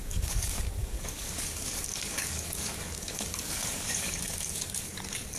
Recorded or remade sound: remade